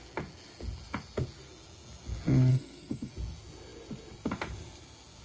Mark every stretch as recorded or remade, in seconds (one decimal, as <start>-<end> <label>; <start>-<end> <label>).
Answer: 0.0-2.5 recorded; 2.5-3.1 remade; 3.1-5.2 recorded